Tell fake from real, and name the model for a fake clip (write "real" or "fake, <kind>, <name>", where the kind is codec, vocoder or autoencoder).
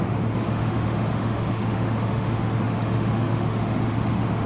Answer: fake, autoencoder, DAC-VAE